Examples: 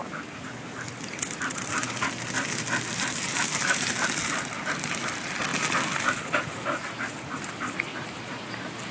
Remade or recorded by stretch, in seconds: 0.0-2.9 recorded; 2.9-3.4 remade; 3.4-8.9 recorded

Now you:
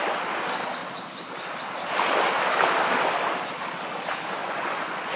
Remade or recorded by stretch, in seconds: 0.0-4.4 recorded; 4.4-5.2 remade

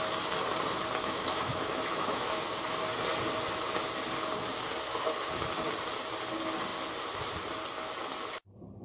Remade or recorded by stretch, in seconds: 0.0-1.0 recorded; 1.0-2.4 remade; 2.4-8.8 recorded